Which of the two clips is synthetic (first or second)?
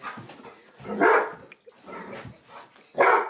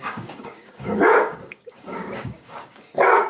second